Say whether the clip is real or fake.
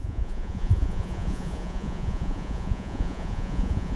fake